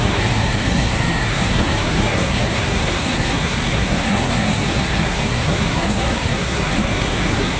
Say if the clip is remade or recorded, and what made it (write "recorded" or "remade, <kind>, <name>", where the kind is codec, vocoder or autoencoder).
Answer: remade, codec, SNAC